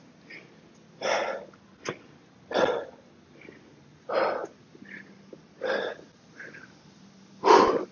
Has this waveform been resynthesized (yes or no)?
no